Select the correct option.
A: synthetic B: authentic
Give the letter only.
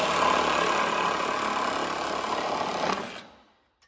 B